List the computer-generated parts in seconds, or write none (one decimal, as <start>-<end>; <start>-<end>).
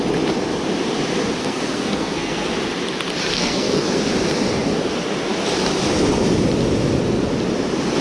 1.4-2.5; 3.3-4.0